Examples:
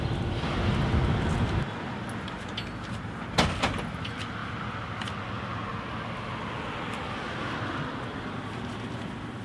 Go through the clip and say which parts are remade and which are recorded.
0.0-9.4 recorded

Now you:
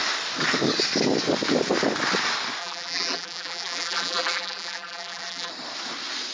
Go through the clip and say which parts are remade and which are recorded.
0.0-2.6 recorded; 2.6-5.5 remade; 5.5-6.3 recorded

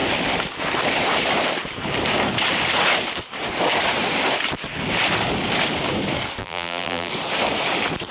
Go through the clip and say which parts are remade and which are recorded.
0.0-6.4 recorded; 6.4-7.1 remade; 7.1-8.1 recorded

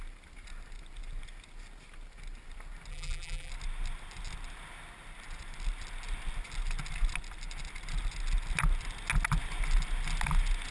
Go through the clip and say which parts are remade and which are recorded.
0.0-2.9 recorded; 2.9-3.5 remade; 3.5-10.7 recorded

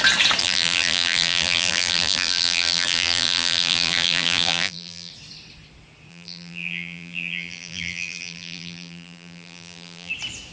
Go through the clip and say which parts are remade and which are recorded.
0.0-0.4 recorded; 0.4-5.1 remade; 5.1-6.1 recorded; 6.1-10.1 remade; 10.1-10.5 recorded

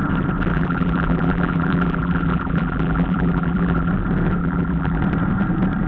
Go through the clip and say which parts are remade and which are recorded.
0.0-0.5 recorded; 0.5-3.9 remade; 3.9-4.4 recorded; 4.4-5.0 remade; 5.0-5.9 recorded